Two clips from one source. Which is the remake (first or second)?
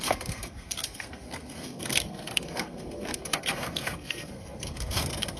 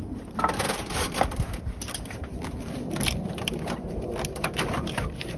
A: first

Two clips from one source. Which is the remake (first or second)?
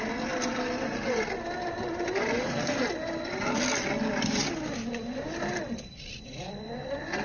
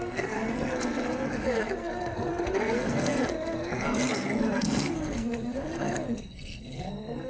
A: second